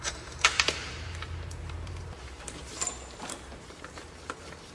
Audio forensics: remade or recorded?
remade